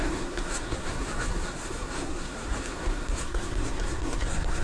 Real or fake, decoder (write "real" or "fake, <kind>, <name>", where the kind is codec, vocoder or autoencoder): fake, codec, SNAC